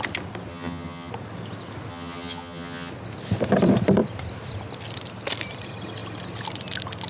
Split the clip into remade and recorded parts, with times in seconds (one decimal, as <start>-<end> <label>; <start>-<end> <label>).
0.0-0.5 recorded; 0.5-1.1 remade; 1.1-1.9 recorded; 1.9-2.9 remade; 2.9-7.1 recorded

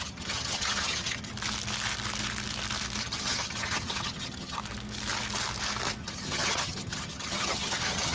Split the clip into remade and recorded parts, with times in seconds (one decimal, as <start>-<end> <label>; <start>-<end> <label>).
0.0-1.3 remade; 1.3-3.0 recorded; 3.0-4.6 remade; 4.6-6.0 recorded; 6.0-8.1 remade

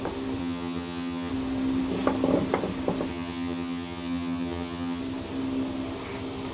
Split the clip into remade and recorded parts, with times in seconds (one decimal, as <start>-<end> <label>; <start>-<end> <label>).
0.0-0.4 recorded; 0.4-1.3 remade; 1.3-3.1 recorded; 3.1-5.0 remade; 5.0-6.5 recorded

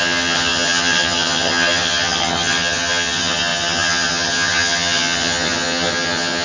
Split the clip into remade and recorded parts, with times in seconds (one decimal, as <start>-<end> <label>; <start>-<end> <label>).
0.0-6.4 remade